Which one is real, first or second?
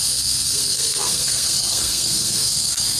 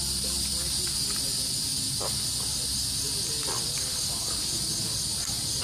second